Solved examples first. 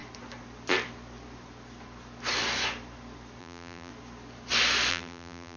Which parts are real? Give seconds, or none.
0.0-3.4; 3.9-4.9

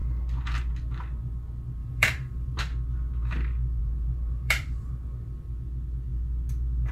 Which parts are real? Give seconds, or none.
0.0-1.8; 2.6-3.8; 5.0-6.9

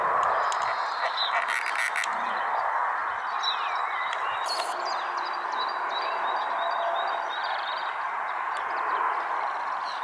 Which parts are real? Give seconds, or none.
0.0-7.4; 8.6-10.0

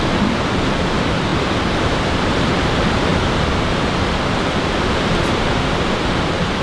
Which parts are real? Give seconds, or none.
3.1-3.9